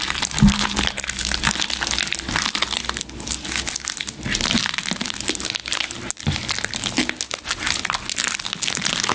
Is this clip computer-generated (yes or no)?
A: no